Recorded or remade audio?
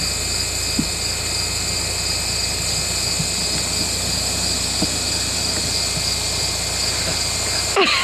recorded